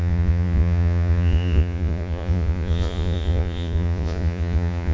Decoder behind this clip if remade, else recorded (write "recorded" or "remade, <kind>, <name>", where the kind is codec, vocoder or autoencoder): remade, vocoder, Vocos